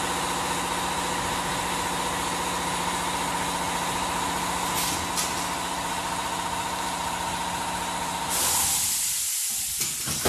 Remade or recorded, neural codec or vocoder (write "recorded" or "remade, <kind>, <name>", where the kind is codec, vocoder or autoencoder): recorded